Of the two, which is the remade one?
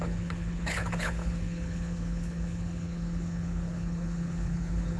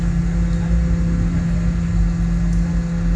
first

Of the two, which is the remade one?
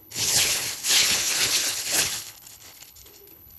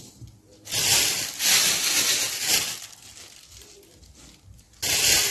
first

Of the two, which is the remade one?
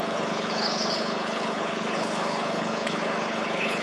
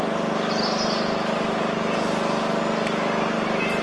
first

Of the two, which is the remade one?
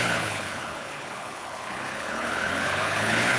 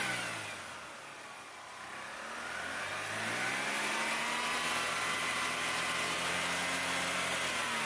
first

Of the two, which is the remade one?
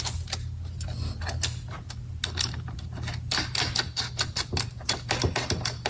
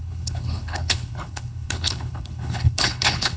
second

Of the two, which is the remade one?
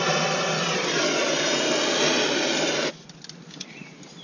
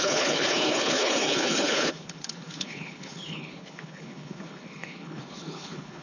second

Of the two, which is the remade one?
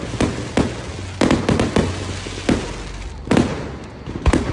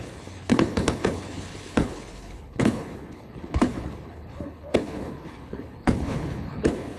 second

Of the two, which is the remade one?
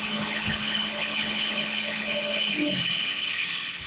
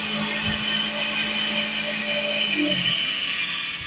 first